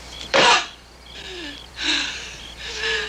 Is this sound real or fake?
fake